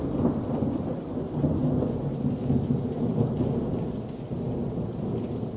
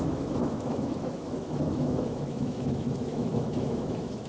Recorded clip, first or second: first